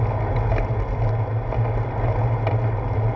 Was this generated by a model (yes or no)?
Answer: no